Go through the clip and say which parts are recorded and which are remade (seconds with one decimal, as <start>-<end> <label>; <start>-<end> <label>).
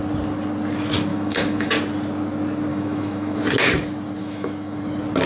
0.0-1.1 recorded; 1.1-1.7 remade; 1.7-2.7 recorded; 2.7-3.4 remade; 3.4-4.2 recorded; 4.2-4.8 remade; 4.8-5.3 recorded